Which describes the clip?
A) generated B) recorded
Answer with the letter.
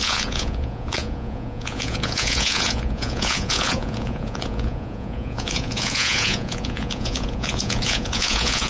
A